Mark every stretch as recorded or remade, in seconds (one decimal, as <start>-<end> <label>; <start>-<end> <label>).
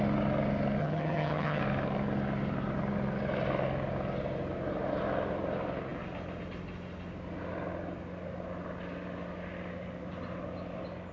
0.0-0.8 recorded; 0.8-1.6 remade; 1.6-11.1 recorded